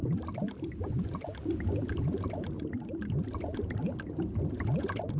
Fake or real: fake